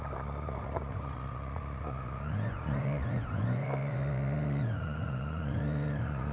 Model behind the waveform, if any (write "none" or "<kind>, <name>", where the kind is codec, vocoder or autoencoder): vocoder, Vocos